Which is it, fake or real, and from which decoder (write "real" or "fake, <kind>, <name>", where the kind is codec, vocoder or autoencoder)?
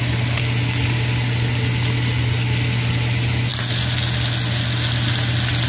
real